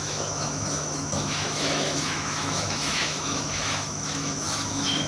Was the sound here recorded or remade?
remade